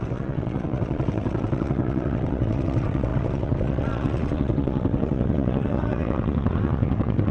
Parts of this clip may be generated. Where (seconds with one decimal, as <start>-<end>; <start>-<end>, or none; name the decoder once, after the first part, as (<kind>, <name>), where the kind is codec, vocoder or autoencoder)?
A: 0.0-7.3 (vocoder, WaveNeXt)